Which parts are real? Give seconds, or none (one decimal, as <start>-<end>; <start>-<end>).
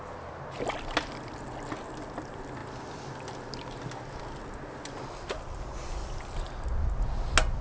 0.0-7.6